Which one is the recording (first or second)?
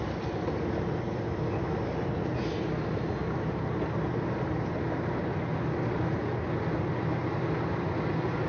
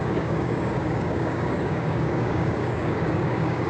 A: first